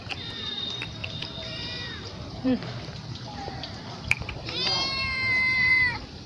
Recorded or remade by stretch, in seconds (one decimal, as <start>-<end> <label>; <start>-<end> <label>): 0.0-6.3 remade